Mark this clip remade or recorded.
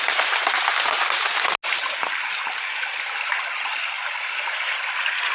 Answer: recorded